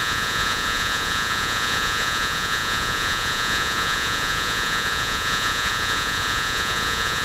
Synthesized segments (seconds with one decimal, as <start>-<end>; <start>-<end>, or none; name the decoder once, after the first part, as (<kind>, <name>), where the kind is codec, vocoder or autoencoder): 0.0-7.2 (vocoder, Vocos)